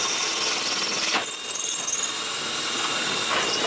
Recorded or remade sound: recorded